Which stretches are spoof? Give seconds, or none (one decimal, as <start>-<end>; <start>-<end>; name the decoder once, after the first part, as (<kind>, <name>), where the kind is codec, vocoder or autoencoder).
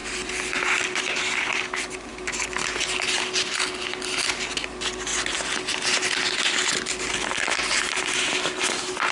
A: none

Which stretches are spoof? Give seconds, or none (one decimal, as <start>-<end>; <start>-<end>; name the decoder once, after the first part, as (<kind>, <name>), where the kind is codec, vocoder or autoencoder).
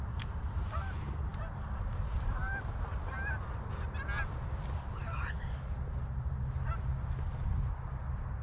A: none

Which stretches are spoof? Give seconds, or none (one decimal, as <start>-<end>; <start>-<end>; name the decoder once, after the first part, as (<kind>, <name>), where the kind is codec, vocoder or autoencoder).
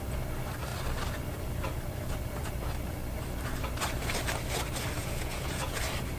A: 5.0-5.8 (vocoder, Vocos)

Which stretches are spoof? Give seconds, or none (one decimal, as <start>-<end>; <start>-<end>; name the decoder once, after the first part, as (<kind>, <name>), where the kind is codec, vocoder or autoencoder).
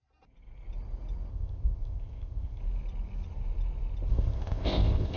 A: 1.3-2.6 (codec, ZipCodec); 4.1-5.2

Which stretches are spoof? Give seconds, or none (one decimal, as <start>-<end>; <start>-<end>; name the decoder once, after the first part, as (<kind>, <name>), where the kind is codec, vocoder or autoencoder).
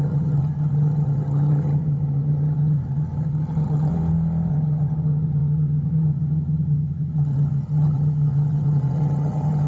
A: 0.0-3.9 (vocoder, HiFi-GAN); 4.5-9.7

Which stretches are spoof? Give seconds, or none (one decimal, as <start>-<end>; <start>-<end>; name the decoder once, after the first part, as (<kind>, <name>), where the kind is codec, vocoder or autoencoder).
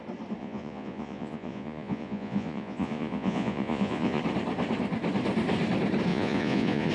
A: 0.4-4.2 (vocoder, Vocos); 6.1-6.9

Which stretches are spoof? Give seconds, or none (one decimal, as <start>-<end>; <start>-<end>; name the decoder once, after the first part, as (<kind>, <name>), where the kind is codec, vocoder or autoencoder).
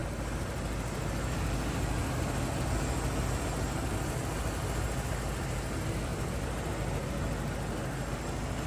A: none